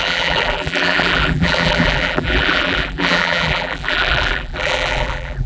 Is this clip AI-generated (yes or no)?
yes